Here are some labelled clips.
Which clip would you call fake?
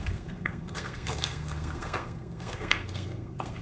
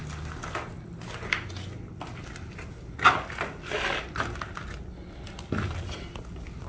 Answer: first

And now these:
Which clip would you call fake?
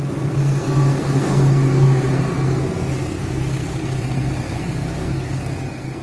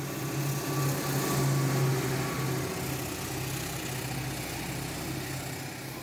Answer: first